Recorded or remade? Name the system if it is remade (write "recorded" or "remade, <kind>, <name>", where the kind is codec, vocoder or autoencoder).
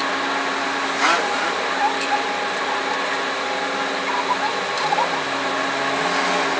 recorded